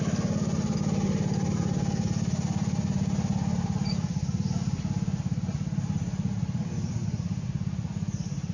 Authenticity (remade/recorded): recorded